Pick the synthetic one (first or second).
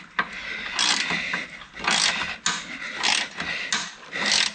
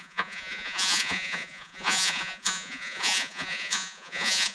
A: second